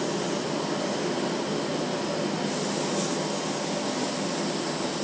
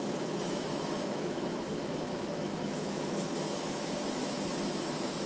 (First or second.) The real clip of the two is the first